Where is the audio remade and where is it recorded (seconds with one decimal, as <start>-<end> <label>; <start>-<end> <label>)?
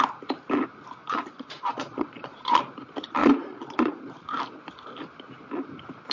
0.0-1.0 recorded; 1.0-2.6 remade; 2.6-3.2 recorded; 3.2-4.0 remade; 4.0-6.1 recorded